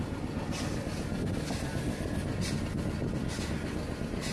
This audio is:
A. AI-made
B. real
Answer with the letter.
B